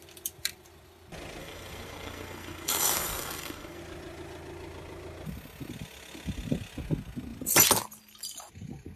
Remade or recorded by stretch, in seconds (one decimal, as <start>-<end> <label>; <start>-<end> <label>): 0.0-1.4 recorded; 1.4-3.8 remade; 3.8-9.0 recorded